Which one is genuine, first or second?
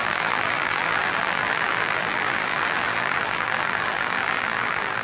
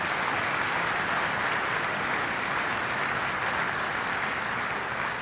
second